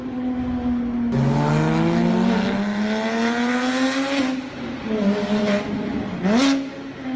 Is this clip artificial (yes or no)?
no